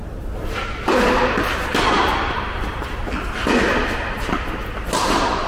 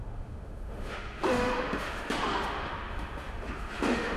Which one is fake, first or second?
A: second